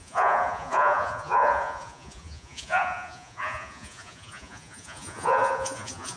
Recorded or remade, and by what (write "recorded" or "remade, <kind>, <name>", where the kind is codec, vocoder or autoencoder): remade, vocoder, Vocos